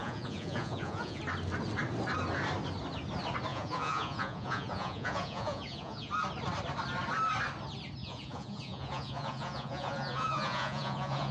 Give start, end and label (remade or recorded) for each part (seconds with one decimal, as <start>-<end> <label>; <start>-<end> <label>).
0.0-1.2 remade; 1.2-3.5 recorded; 3.5-6.1 remade; 6.1-8.0 recorded; 8.0-11.3 remade